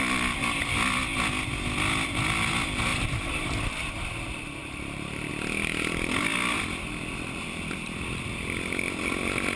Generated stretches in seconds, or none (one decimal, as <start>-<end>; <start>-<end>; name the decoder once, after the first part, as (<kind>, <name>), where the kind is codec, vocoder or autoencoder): 2.9-3.9 (vocoder, BigVGAN v2); 4.6-5.3